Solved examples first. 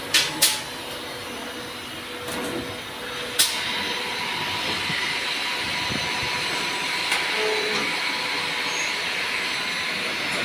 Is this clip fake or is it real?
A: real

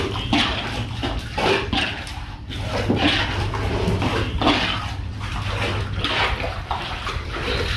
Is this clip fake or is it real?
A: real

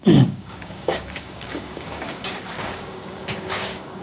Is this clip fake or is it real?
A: fake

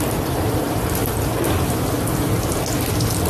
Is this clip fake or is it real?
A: real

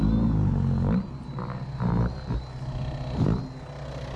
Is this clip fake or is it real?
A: real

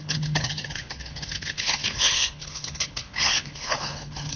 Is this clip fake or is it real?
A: fake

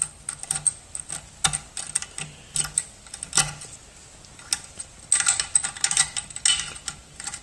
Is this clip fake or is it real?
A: real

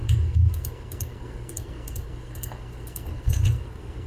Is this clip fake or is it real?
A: fake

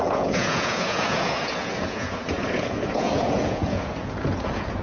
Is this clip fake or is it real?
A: fake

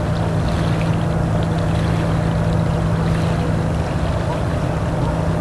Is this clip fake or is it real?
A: real